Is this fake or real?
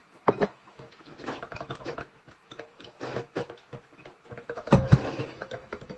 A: fake